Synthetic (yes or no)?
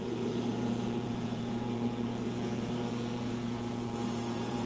yes